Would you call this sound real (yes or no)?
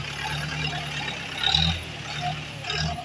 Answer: yes